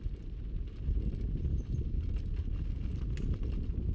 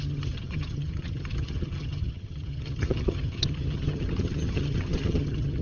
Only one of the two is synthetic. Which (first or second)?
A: second